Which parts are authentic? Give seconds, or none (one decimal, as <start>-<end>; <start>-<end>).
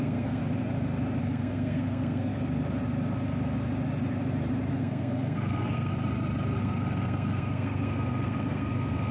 0.4-1.2; 2.3-4.7; 5.9-6.6